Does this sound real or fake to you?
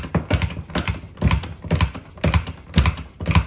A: real